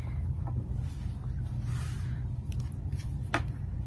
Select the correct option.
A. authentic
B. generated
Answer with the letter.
A